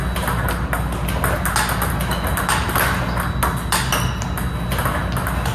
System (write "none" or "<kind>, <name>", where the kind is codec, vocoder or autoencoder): none